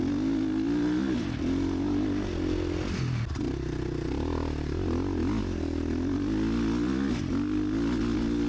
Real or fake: real